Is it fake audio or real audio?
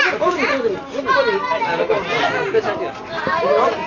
real